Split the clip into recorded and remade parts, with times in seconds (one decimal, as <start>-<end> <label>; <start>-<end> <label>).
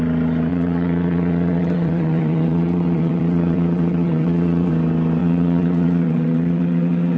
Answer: 0.0-0.5 recorded; 0.5-4.7 remade; 4.7-5.2 recorded; 5.2-7.2 remade